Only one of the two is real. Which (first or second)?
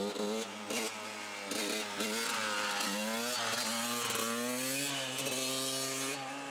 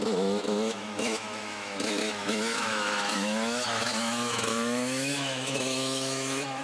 first